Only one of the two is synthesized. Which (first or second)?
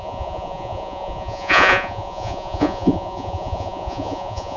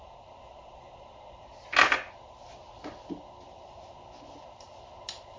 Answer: first